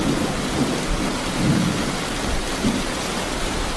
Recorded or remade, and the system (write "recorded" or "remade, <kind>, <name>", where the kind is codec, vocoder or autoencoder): recorded